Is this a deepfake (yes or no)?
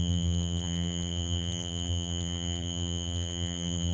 yes